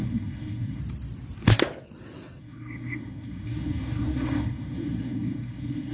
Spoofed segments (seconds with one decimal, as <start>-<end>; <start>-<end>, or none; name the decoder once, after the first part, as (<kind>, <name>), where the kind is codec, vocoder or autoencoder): 0.0-0.8 (codec, SNAC); 2.4-5.9